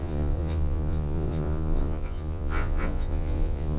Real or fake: fake